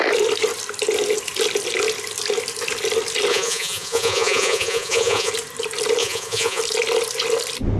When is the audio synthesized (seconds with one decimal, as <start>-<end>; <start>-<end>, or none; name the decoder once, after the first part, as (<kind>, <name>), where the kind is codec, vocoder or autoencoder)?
3.3-5.3 (vocoder, Vocos); 6.0-6.6